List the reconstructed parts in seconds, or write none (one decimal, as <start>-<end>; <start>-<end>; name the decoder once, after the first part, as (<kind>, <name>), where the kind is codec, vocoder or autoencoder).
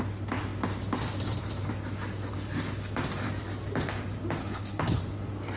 4.4-5.0 (codec, HILCodec)